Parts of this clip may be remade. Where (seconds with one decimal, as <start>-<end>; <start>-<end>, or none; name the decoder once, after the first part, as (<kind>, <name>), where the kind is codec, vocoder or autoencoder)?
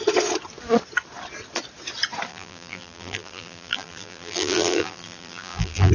2.3-5.9 (vocoder, BigVGAN v2)